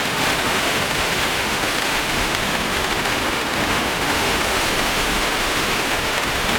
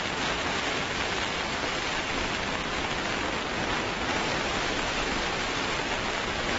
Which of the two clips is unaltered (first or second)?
second